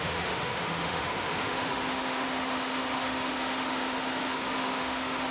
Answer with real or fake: fake